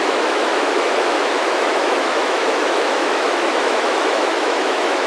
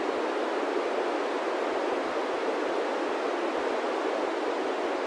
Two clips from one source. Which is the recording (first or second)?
second